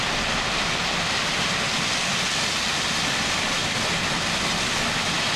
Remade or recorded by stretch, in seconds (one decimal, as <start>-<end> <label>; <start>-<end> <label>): 0.0-5.4 recorded